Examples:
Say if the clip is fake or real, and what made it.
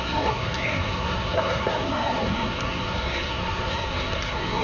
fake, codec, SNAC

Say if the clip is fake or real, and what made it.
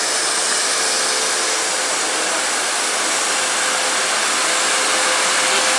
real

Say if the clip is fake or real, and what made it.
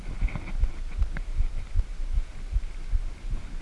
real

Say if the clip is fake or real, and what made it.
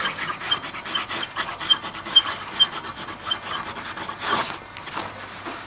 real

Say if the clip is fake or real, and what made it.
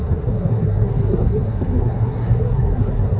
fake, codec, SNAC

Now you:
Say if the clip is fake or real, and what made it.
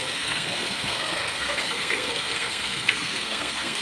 fake, codec, SNAC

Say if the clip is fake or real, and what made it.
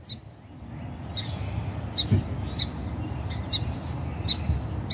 real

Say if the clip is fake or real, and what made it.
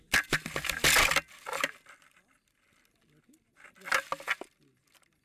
real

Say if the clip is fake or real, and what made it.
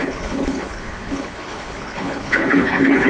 fake, codec, HILCodec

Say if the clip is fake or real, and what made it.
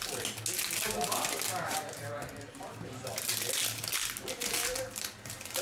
real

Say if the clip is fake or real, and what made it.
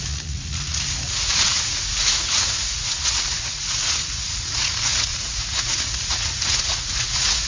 fake, vocoder, Vocos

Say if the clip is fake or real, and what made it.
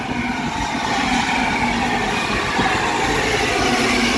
real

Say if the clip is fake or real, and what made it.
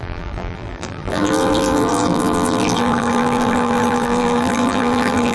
fake, vocoder, BigVGAN v2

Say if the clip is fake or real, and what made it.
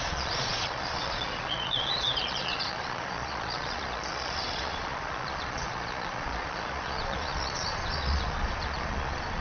fake, vocoder, Vocos